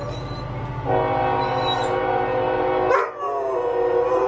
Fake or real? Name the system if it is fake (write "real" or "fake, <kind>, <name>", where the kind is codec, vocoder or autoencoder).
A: real